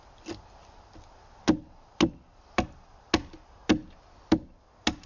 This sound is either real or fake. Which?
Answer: real